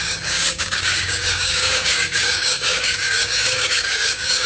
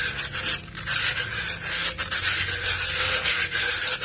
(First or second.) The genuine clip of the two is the second